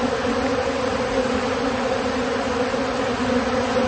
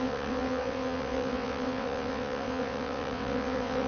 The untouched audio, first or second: first